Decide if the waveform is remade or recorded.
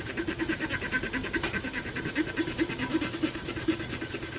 recorded